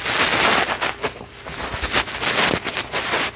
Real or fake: real